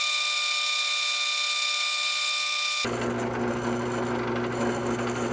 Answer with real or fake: real